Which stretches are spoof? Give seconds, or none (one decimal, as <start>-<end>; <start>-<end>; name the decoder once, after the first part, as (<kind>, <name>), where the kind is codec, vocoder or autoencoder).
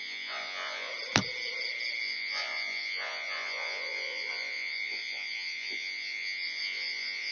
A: 0.0-0.9 (vocoder, Vocos); 2.0-7.3